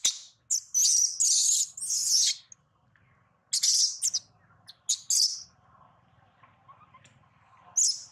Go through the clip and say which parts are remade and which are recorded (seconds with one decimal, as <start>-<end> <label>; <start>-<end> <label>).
0.0-8.1 recorded